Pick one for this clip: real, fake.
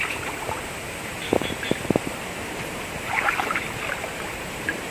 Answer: fake